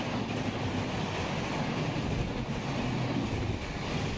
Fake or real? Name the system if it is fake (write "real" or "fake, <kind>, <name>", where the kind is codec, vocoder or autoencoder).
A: real